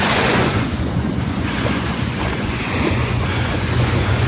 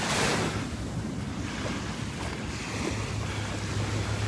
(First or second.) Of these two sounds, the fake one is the first